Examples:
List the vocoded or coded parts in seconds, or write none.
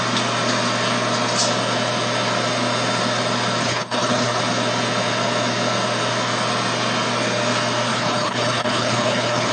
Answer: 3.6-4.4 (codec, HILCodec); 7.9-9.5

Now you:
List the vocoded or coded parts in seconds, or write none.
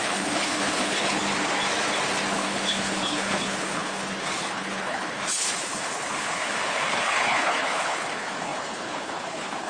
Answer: 0.0-1.2 (codec, HILCodec); 2.3-9.7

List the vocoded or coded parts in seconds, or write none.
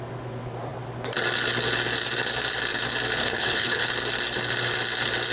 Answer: 3.2-3.9 (codec, HILCodec)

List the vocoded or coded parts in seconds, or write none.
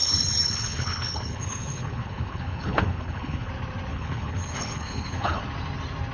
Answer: 0.0-3.5 (codec, HILCodec); 3.9-5.4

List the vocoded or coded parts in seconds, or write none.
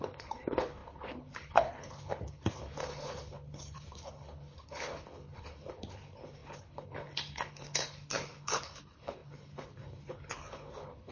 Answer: 0.0-11.1 (codec, HILCodec)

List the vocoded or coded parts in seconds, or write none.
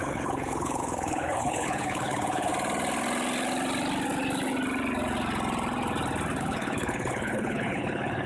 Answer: 0.0-2.5 (codec, HILCodec); 6.4-8.3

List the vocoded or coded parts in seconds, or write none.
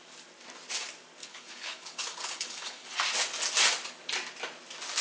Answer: 1.2-2.9 (codec, HILCodec)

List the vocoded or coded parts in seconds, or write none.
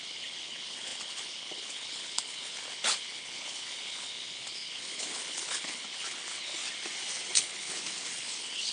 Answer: 0.0-6.6 (codec, HILCodec); 7.3-8.7